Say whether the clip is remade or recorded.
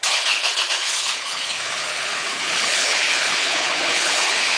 remade